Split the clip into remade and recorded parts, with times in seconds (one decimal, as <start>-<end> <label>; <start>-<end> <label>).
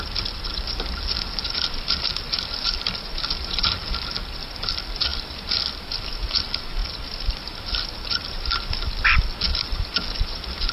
0.0-10.7 recorded